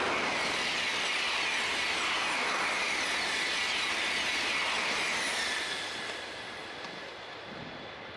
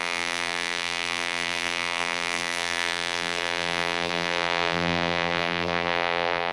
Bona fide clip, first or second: first